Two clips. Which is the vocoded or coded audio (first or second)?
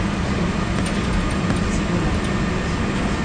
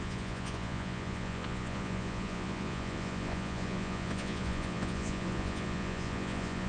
second